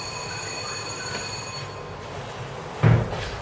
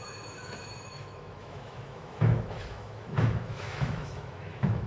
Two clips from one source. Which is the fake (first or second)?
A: second